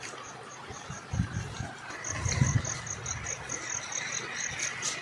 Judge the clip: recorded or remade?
recorded